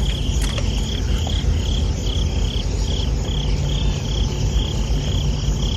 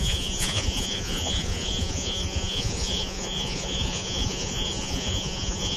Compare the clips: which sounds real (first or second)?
first